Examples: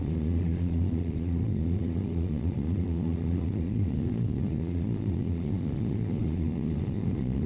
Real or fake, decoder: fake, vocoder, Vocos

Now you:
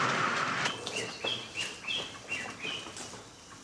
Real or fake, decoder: real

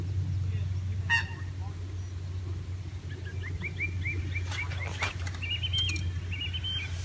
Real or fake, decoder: real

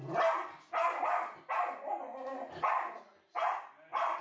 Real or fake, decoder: real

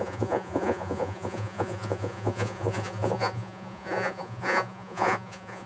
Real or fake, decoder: fake, vocoder, Vocos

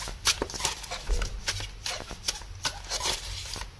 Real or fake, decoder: real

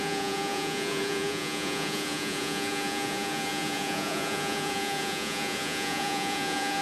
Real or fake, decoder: fake, vocoder, Vocos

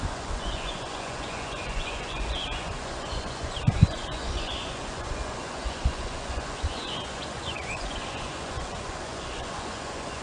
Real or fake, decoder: fake, vocoder, Vocos